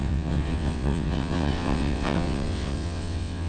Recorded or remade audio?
remade